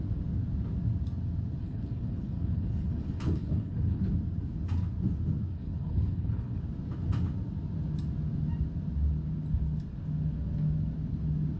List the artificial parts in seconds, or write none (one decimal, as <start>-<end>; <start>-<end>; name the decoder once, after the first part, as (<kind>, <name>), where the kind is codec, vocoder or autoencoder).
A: 1.6-4.0 (codec, HILCodec); 5.5-6.6